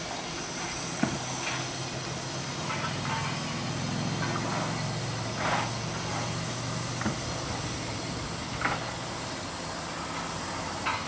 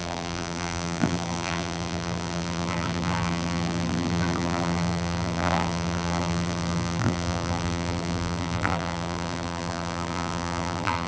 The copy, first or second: second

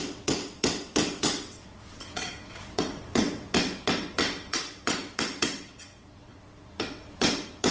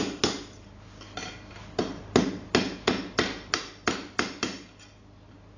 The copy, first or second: first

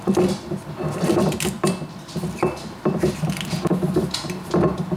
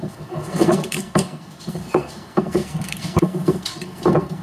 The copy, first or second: second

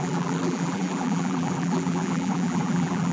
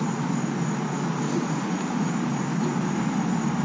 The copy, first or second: first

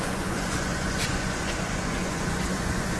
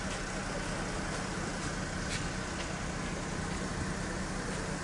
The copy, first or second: first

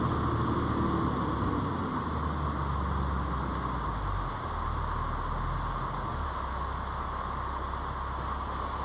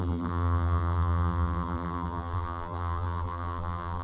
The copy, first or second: second